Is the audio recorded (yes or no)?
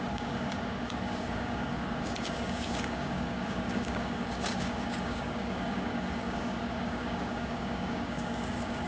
no